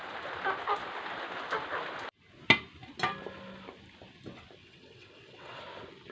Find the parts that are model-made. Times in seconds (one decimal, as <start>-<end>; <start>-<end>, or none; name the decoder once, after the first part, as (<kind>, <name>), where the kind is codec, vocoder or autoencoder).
4.6-5.6 (vocoder, WaveNeXt)